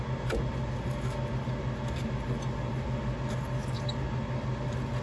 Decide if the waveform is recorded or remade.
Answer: recorded